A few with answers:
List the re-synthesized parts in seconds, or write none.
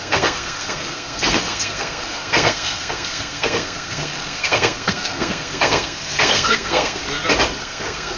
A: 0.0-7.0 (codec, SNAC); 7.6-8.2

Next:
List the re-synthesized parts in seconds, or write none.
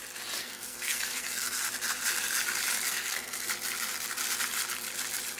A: 0.4-1.7 (codec, SNAC); 2.9-3.5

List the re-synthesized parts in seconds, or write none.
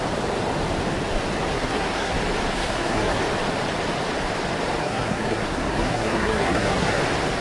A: 1.5-2.1 (codec, SNAC); 2.5-3.2; 4.8-7.0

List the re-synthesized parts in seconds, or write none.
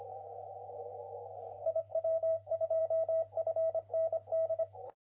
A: 0.0-2.8 (codec, SNAC); 4.5-5.1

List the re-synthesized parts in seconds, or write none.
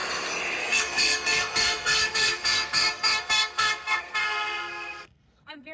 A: 0.6-5.7 (codec, SNAC)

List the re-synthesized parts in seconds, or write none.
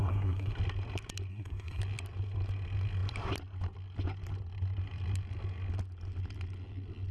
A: 0.0-0.5 (codec, SNAC); 1.3-1.8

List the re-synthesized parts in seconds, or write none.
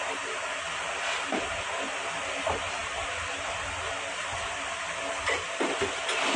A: none